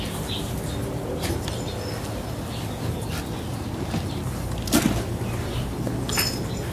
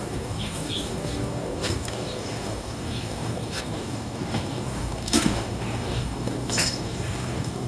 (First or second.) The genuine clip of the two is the first